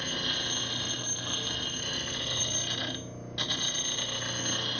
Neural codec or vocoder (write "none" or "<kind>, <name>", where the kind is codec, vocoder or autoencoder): none